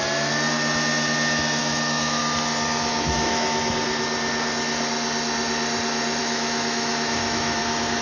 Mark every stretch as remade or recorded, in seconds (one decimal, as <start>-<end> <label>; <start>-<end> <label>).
0.0-1.6 recorded; 1.6-2.2 remade; 2.2-2.9 recorded; 2.9-3.7 remade; 3.7-6.2 recorded; 6.2-7.6 remade; 7.6-8.0 recorded